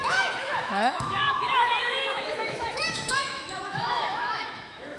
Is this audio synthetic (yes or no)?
yes